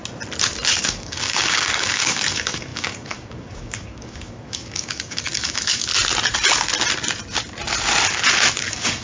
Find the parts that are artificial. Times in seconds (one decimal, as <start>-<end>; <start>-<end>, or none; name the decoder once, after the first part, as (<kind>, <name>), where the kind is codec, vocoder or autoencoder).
0.8-5.9 (codec, DAC); 8.6-9.0